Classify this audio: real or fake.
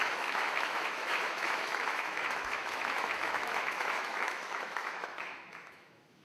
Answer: fake